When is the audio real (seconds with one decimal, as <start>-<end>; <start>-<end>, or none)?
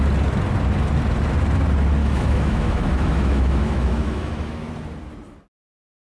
0.0-2.0; 4.7-6.1